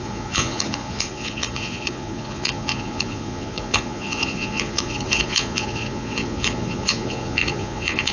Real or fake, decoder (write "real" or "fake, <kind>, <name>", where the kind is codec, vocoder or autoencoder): fake, vocoder, Vocos